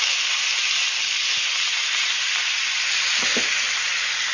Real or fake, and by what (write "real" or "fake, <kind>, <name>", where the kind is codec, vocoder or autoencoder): real